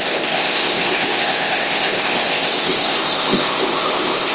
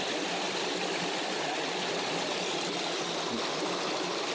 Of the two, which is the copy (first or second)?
first